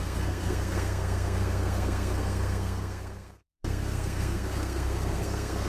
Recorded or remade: remade